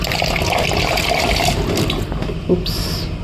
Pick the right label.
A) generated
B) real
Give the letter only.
B